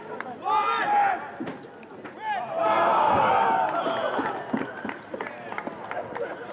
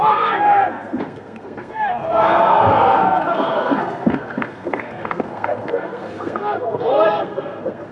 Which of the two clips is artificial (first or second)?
second